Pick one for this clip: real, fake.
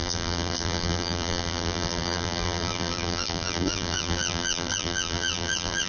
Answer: fake